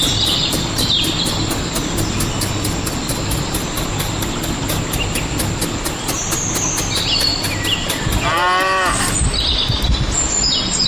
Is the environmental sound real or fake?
real